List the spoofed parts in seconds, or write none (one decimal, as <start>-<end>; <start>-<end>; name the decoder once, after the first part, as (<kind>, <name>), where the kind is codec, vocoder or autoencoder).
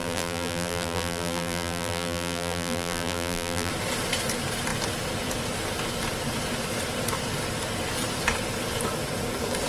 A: 0.0-3.7 (vocoder, BigVGAN v2)